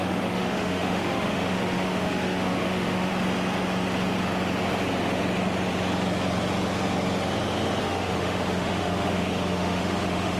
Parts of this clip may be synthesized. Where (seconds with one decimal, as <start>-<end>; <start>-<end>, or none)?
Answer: 0.0-3.1; 7.8-10.4